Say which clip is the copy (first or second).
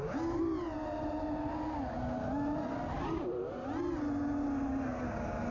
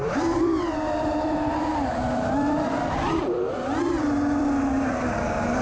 second